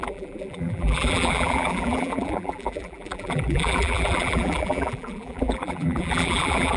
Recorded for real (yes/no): no